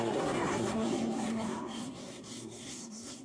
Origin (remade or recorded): remade